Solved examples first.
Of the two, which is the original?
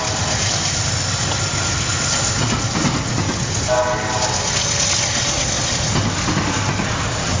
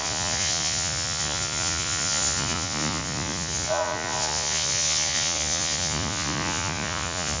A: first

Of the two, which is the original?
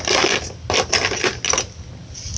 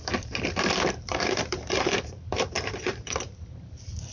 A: first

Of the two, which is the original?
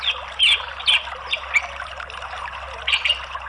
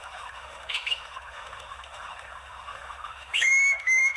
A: first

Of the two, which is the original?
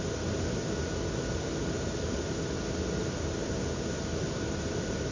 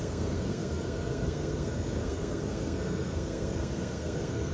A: first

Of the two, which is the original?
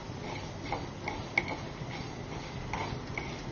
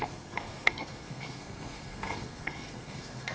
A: first